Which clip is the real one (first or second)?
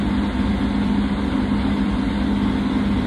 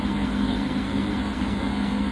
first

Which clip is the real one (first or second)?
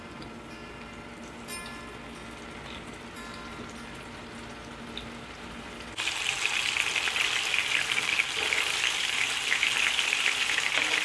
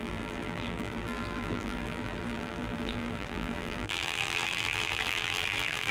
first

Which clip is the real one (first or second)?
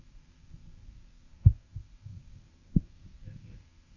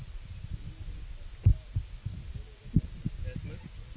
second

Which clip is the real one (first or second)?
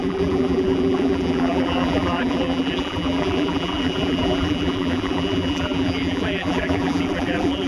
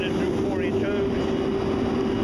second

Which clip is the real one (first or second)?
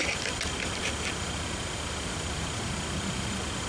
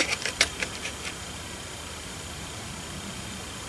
first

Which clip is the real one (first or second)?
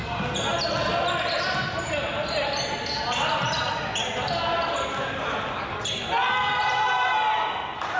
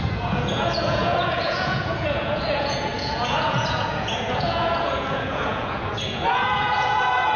first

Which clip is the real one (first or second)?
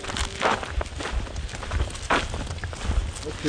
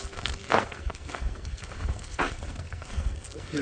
first